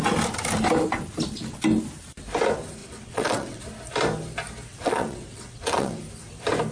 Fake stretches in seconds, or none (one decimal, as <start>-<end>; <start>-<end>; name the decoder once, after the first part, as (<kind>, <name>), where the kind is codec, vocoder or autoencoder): 2.8-3.6 (vocoder, WaveNeXt); 4.7-6.0